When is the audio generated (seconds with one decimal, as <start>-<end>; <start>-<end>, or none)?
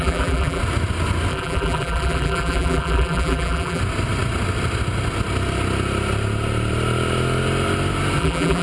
0.0-0.6; 1.3-3.8; 8.2-8.6